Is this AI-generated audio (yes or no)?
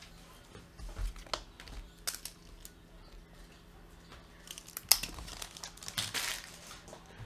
no